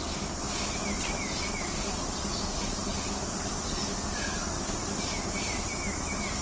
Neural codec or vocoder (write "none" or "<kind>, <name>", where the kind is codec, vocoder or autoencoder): none